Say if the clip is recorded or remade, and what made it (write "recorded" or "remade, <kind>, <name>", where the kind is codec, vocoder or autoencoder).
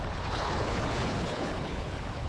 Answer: remade, codec, HILCodec